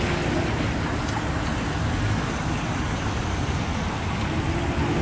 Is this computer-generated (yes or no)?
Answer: no